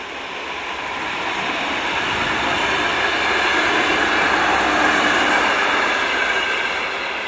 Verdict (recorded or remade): recorded